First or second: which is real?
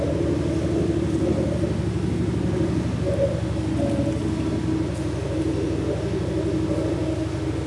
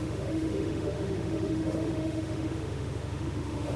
first